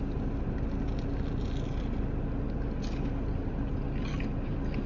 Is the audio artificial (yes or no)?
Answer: no